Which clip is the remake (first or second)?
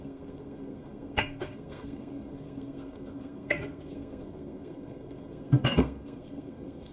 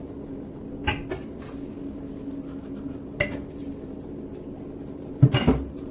first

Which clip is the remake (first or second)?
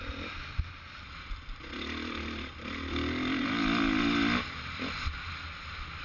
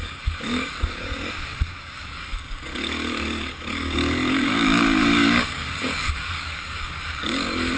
second